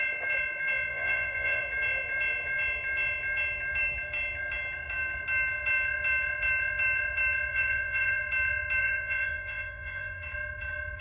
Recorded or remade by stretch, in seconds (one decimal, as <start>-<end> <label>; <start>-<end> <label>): 0.0-0.9 recorded; 0.9-1.6 remade; 1.6-7.5 recorded; 7.5-8.2 remade; 8.2-8.8 recorded; 8.8-10.2 remade; 10.2-11.0 recorded